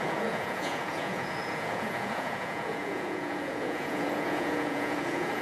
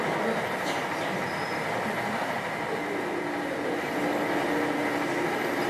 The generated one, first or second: first